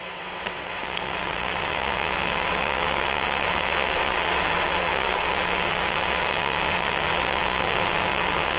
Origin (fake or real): fake